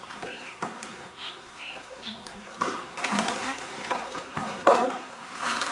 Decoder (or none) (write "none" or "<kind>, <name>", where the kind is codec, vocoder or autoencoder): codec, SNAC